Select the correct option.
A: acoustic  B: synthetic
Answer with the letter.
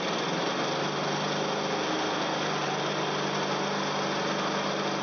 A